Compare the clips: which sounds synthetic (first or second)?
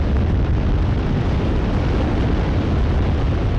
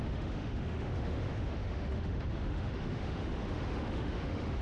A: second